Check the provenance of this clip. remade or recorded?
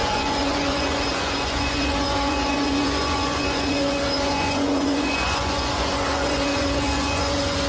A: remade